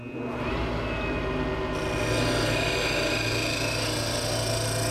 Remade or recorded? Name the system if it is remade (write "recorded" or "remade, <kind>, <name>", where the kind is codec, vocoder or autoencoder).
recorded